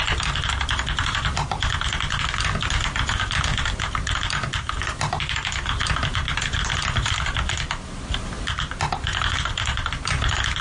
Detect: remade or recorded recorded